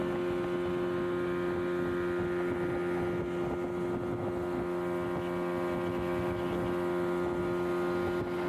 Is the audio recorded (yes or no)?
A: yes